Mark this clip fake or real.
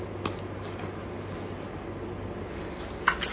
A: real